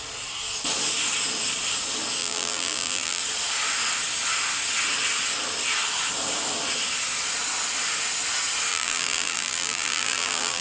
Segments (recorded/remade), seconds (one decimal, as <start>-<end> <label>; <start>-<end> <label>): 0.0-2.2 recorded; 2.2-3.2 remade; 3.2-8.7 recorded; 8.7-10.6 remade